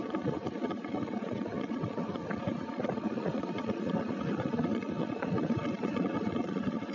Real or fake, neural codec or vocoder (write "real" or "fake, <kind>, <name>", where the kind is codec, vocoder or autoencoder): fake, vocoder, Vocos